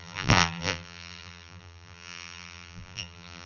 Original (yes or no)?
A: no